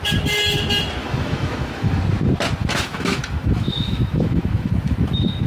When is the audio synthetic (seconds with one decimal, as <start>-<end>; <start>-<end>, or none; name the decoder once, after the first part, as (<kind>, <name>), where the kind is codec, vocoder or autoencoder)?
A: 1.0-2.0 (autoencoder, DAC-VAE); 2.6-5.5